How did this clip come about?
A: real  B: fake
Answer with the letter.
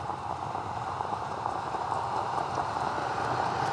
B